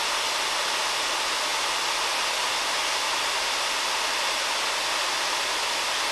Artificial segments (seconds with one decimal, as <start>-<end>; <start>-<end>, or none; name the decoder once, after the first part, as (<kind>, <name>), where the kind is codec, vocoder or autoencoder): none